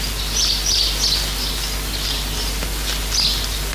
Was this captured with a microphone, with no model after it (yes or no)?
yes